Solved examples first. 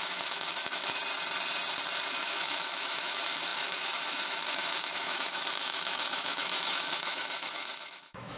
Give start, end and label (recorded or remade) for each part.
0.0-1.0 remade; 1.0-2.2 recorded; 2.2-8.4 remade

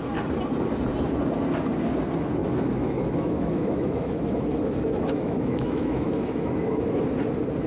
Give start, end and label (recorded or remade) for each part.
0.0-2.4 recorded; 2.4-7.0 remade; 7.0-7.7 recorded